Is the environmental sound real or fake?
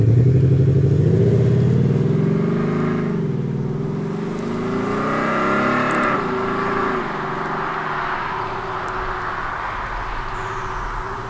real